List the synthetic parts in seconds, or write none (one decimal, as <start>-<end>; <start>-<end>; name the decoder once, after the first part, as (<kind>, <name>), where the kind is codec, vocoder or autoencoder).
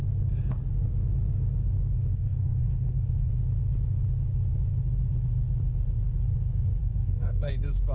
2.1-3.3 (codec, SNAC); 6.8-7.5